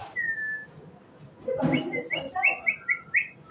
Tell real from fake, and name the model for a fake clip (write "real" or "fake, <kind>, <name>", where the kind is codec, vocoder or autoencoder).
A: real